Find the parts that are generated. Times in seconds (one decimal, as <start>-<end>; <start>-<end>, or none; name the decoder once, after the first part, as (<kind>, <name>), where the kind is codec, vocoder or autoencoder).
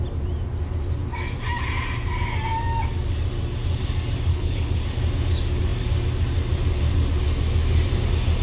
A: 4.3-4.8 (codec, HILCodec)